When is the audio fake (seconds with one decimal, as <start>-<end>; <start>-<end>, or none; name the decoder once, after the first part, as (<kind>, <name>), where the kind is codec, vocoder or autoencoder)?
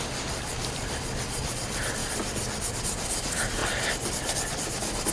0.0-2.0 (vocoder, BigVGAN v2); 2.8-5.1